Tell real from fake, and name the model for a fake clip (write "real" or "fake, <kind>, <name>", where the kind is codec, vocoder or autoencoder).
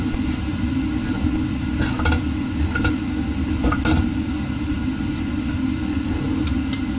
real